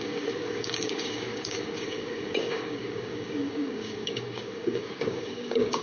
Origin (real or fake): fake